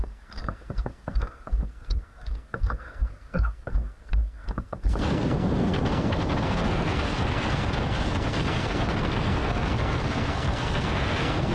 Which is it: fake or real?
fake